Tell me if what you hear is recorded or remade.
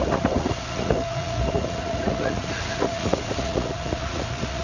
remade